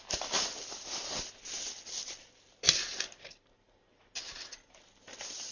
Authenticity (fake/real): real